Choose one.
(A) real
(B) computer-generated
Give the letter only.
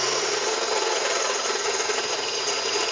B